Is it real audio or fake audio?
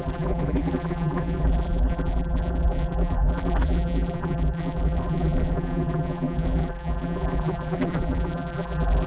fake